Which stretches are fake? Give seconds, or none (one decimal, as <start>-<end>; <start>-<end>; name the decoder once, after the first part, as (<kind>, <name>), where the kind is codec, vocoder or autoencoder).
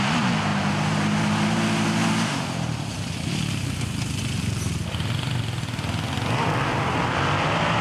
none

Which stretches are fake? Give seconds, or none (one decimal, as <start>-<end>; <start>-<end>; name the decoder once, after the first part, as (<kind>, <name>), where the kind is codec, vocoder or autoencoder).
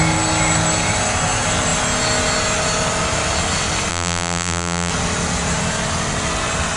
3.9-4.9 (vocoder, BigVGAN v2)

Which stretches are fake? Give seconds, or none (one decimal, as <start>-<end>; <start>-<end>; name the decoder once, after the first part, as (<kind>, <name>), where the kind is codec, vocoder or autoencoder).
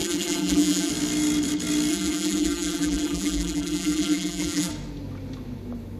0.0-0.9 (vocoder, BigVGAN v2); 1.9-4.7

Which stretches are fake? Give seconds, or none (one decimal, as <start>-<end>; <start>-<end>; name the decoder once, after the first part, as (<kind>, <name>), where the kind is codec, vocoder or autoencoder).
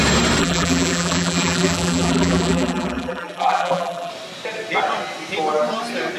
0.4-4.1 (vocoder, BigVGAN v2)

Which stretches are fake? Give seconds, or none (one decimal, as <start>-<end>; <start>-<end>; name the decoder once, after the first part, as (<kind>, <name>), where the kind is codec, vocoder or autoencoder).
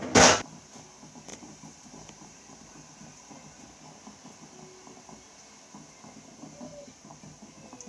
1.3-3.6 (vocoder, BigVGAN v2); 6.7-7.4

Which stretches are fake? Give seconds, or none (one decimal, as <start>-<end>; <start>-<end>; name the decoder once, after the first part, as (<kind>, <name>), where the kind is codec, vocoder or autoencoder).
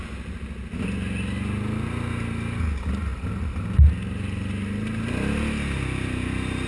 none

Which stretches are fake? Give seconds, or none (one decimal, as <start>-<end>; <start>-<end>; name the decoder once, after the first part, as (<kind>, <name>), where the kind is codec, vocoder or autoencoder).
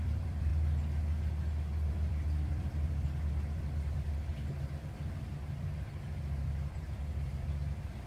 0.0-0.5 (vocoder, BigVGAN v2); 1.9-8.1